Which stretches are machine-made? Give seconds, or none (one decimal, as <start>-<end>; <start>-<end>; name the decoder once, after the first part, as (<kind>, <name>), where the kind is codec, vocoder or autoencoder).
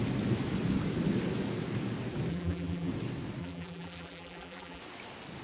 2.3-2.9 (vocoder, BigVGAN v2); 3.4-4.8